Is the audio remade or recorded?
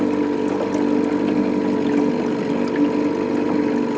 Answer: recorded